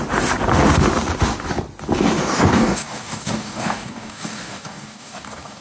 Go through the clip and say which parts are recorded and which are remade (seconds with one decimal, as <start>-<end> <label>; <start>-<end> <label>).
0.0-2.2 recorded; 2.2-5.6 remade